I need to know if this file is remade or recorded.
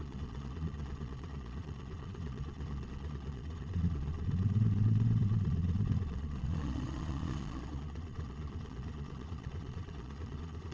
remade